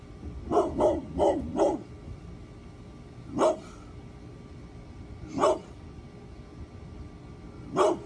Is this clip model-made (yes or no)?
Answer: no